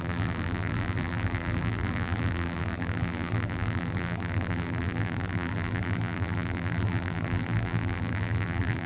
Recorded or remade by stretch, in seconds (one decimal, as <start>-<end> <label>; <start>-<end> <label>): 0.0-8.9 remade